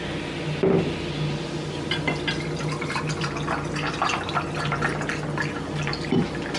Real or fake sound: real